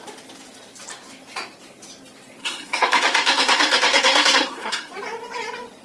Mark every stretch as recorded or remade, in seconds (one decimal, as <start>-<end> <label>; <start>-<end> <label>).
0.0-2.4 recorded; 2.4-4.9 remade; 4.9-5.8 recorded